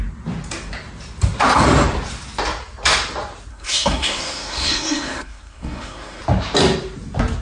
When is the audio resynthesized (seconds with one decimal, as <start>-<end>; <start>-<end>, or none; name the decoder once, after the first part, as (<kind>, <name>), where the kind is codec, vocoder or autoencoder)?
3.5-6.2 (codec, SNAC)